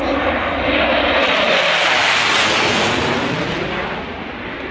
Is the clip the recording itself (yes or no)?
yes